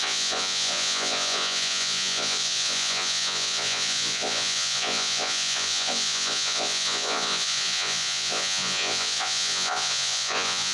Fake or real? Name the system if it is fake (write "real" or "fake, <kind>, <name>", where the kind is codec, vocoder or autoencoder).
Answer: fake, vocoder, Vocos